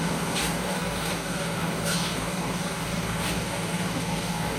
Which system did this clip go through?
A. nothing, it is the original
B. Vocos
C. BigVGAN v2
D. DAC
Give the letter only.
D